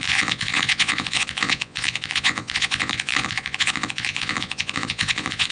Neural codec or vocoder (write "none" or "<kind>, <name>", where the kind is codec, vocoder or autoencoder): vocoder, Vocos